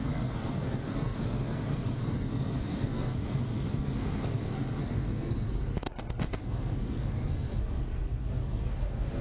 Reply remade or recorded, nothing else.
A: remade